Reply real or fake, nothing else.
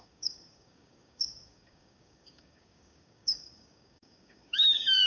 fake